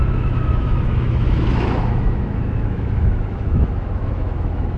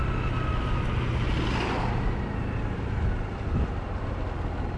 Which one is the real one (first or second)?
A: second